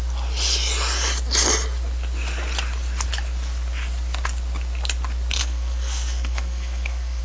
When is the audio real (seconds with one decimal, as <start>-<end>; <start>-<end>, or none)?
0.0-5.4